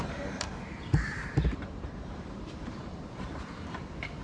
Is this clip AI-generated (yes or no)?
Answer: yes